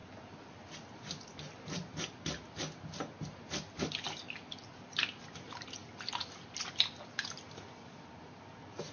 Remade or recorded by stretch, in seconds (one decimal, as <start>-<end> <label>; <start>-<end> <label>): 0.0-8.9 recorded